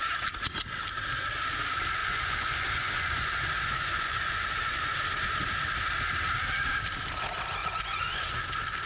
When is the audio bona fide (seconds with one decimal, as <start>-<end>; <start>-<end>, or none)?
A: 0.0-2.0; 4.8-7.6; 8.5-8.9